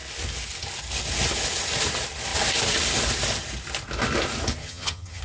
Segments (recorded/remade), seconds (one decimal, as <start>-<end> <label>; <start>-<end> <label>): 0.0-4.6 recorded; 4.6-5.2 remade